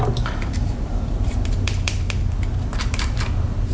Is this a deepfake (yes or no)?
yes